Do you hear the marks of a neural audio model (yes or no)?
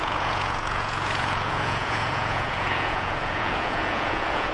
yes